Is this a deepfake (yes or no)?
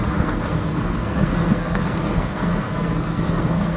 yes